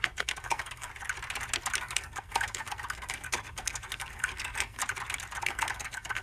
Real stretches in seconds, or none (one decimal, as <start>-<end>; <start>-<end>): 0.9-1.8; 4.8-5.4